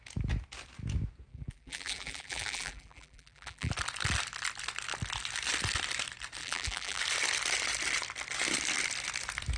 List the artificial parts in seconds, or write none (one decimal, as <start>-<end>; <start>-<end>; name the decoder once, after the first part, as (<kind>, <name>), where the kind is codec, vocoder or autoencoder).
1.3-3.7 (vocoder, BigVGAN v2); 6.4-7.0